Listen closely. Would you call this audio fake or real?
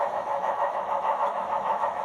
fake